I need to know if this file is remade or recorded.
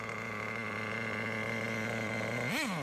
recorded